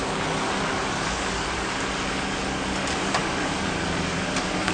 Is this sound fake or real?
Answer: fake